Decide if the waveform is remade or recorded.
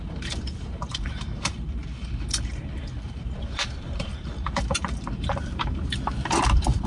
remade